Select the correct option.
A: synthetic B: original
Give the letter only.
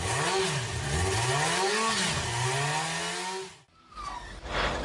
B